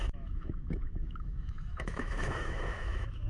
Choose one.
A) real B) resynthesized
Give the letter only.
B